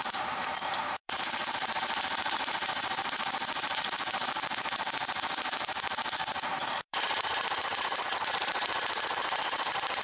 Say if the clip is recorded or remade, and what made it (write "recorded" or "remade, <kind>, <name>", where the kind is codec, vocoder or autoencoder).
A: remade, vocoder, BigVGAN v2